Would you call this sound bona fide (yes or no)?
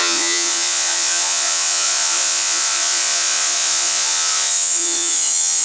no